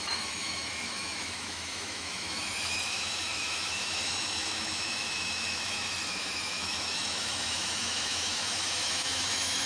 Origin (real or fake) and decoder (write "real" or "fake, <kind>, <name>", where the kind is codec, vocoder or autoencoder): fake, autoencoder, DAC-VAE